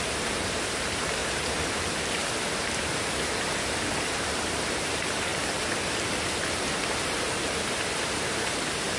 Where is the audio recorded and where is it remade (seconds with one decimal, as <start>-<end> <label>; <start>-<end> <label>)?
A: 0.0-1.2 remade; 1.2-1.7 recorded; 1.7-2.2 remade; 2.2-2.8 recorded; 2.8-5.3 remade; 5.3-6.5 recorded; 6.5-9.0 remade